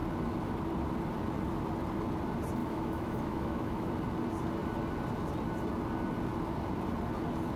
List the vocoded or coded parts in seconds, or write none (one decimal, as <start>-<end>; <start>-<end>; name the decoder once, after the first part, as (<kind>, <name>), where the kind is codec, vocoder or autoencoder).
2.6-3.9 (autoencoder, DAC-VAE)

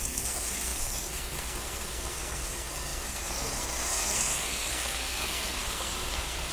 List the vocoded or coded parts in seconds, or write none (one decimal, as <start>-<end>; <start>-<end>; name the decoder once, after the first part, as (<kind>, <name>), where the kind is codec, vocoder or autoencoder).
0.0-6.5 (codec, SNAC)